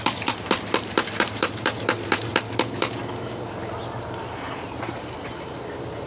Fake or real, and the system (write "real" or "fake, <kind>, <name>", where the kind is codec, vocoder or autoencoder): fake, vocoder, BigVGAN v2